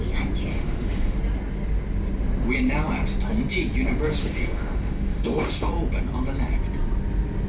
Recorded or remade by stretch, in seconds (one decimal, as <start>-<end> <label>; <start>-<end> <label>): 0.0-0.5 recorded; 0.5-1.2 remade; 1.2-4.2 recorded; 4.2-5.7 remade; 5.7-7.5 recorded